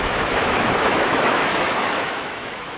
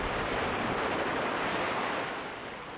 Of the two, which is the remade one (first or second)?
first